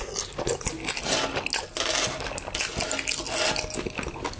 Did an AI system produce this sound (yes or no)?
no